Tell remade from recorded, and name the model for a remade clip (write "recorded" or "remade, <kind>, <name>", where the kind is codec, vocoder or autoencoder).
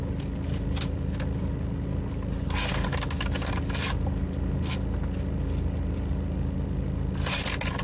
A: recorded